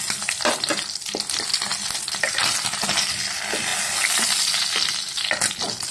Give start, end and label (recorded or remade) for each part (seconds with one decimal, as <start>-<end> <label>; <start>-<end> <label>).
0.0-5.9 recorded